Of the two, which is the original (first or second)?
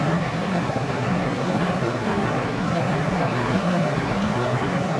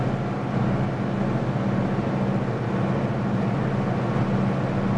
second